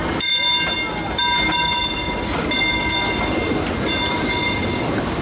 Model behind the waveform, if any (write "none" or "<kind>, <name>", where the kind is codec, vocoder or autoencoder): none